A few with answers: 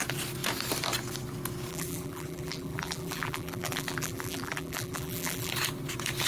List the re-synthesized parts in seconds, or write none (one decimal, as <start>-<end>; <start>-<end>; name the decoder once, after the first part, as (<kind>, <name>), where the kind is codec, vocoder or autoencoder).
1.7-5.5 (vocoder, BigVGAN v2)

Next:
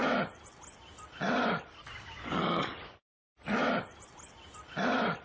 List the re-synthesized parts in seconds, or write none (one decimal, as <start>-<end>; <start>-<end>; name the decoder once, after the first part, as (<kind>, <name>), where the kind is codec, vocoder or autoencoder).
3.1-5.2 (vocoder, BigVGAN v2)

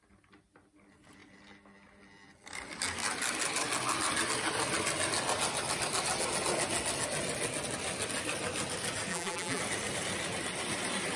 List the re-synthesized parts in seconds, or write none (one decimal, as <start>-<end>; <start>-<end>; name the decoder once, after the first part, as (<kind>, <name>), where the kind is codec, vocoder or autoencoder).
9.1-9.6 (vocoder, BigVGAN v2)